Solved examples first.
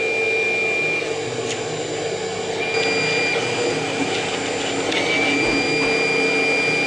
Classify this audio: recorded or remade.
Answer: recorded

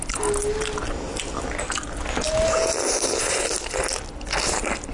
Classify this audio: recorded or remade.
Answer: recorded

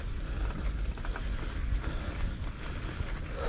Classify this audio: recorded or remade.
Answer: recorded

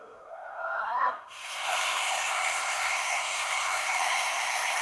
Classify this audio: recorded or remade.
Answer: remade